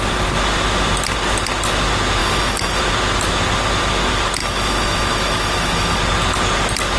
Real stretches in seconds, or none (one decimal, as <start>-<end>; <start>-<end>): 0.0-2.2; 2.8-4.4; 6.0-7.0